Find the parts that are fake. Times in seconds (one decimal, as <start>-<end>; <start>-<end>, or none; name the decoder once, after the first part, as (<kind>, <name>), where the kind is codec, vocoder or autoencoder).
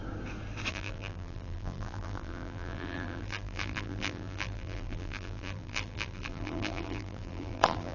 0.7-7.9 (vocoder, BigVGAN v2)